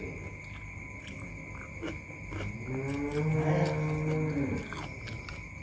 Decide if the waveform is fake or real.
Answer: real